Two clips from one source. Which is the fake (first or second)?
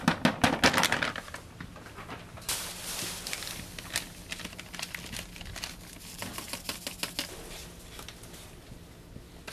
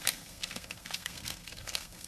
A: second